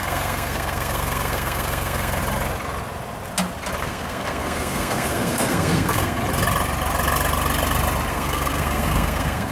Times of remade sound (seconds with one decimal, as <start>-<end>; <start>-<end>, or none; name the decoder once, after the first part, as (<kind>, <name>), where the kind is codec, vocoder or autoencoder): 0.0-2.2 (codec, SNAC); 3.8-6.2; 8.1-9.5